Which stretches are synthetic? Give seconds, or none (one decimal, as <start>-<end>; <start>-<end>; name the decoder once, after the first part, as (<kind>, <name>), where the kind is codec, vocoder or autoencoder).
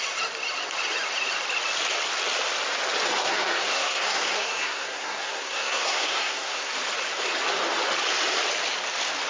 3.2-6.7 (codec, SNAC)